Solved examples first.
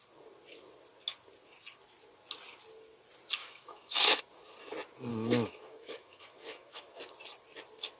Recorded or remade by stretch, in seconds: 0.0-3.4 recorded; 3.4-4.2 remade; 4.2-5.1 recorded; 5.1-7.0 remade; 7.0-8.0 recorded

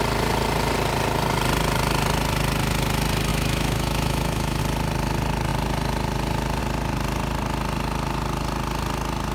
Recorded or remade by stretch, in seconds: 0.0-3.3 recorded; 3.3-4.6 remade; 4.6-9.3 recorded

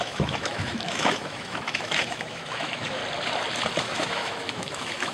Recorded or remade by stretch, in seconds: 0.0-3.0 remade; 3.0-3.8 recorded; 3.8-5.1 remade

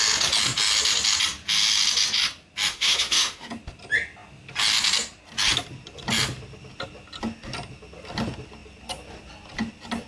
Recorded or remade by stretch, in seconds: 0.0-2.7 recorded; 2.7-3.5 remade; 3.5-10.1 recorded

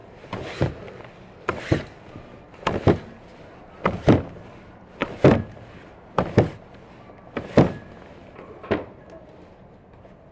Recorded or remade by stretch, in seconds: 0.0-10.3 recorded

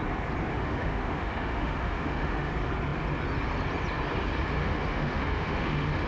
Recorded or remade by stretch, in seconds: 0.0-0.5 recorded; 0.5-2.5 remade; 2.5-4.6 recorded; 4.6-6.1 remade

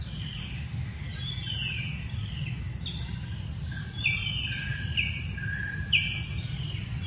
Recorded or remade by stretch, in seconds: 0.0-0.4 recorded; 0.4-1.0 remade; 1.0-7.1 recorded

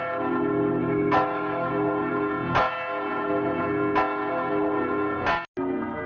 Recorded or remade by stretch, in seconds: 0.0-0.8 recorded; 0.8-1.7 remade; 1.7-6.1 recorded